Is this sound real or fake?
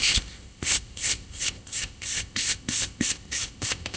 fake